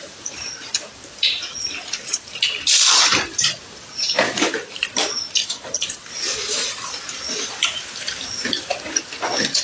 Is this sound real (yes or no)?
no